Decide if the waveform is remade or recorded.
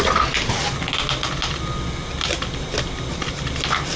recorded